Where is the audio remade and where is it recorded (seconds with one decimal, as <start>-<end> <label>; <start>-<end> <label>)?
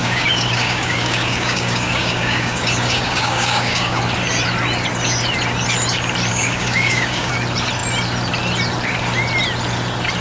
0.0-4.0 remade; 4.0-6.3 recorded; 6.3-7.3 remade; 7.3-10.2 recorded